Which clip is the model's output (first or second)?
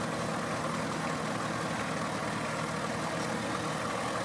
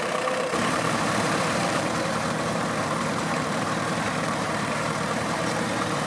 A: second